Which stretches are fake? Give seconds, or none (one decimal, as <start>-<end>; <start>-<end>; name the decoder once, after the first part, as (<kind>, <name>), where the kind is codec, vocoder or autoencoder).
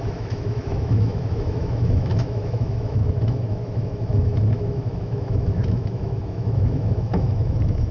0.0-7.9 (autoencoder, DAC-VAE)